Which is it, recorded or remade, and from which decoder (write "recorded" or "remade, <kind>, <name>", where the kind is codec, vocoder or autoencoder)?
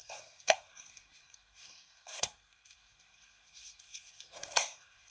remade, codec, SNAC